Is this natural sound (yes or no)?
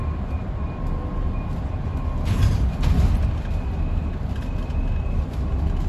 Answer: yes